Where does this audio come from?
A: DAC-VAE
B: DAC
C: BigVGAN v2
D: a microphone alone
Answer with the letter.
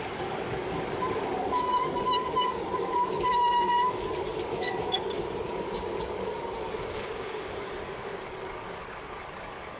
B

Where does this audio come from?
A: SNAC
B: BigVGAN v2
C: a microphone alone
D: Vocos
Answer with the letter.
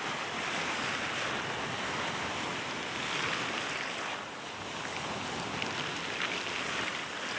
C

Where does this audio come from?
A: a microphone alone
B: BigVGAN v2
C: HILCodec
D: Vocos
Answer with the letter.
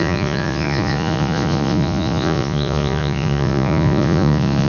D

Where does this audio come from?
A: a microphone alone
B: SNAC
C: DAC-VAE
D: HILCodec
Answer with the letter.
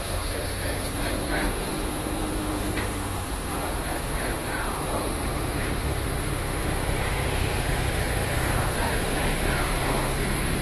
C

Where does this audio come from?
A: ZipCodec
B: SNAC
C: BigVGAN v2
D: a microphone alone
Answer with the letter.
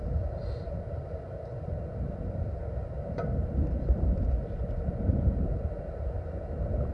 C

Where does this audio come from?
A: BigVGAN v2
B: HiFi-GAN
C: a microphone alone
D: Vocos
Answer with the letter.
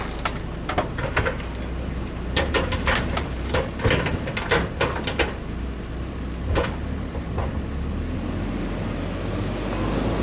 C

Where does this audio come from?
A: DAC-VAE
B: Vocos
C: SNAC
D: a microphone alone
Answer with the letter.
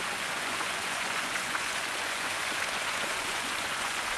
B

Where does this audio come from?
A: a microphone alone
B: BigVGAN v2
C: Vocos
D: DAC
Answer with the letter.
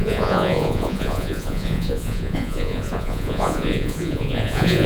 C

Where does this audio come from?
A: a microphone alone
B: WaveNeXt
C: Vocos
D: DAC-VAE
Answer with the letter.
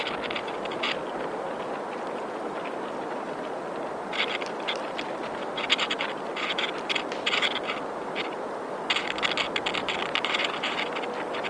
A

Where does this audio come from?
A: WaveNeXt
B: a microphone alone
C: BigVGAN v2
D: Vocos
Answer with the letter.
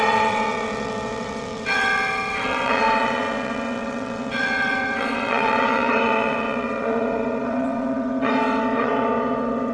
A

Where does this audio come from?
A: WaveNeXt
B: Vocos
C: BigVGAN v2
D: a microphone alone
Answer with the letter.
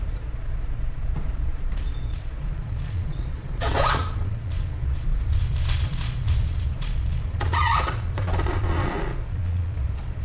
B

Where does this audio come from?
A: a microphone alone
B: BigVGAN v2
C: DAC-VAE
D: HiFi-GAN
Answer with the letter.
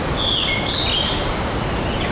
A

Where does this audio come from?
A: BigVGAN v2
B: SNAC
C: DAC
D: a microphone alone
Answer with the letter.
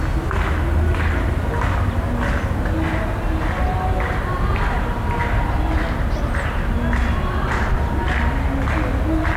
D